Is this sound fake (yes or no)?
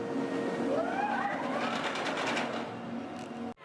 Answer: no